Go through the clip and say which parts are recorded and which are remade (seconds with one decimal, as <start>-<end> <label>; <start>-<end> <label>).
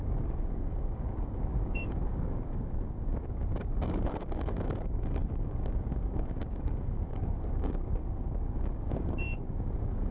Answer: 0.0-10.1 remade